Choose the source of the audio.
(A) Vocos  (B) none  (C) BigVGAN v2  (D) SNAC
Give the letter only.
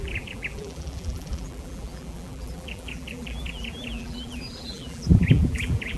C